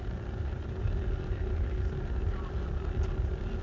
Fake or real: real